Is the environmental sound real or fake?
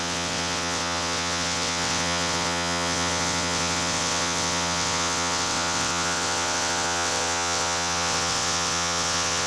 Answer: fake